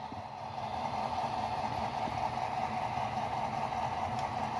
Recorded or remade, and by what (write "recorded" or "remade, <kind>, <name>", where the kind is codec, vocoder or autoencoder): recorded